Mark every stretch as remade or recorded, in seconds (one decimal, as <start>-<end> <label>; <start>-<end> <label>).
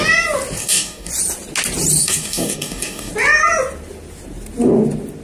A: 0.0-0.6 recorded; 0.6-1.1 remade; 1.1-2.0 recorded; 2.0-3.1 remade; 3.1-5.2 recorded